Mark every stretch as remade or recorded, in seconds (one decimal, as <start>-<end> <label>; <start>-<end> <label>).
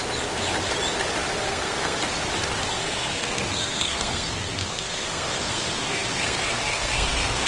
0.0-1.4 recorded; 1.4-2.0 remade; 2.0-2.8 recorded; 2.8-7.5 remade